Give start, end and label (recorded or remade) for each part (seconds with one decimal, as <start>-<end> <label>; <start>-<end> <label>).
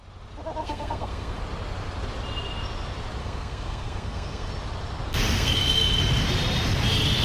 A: 0.0-0.6 recorded; 0.6-1.4 remade; 1.4-3.2 recorded; 3.2-4.5 remade; 4.5-5.1 recorded; 5.1-5.6 remade; 5.6-7.2 recorded